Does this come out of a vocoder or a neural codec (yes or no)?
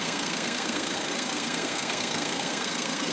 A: yes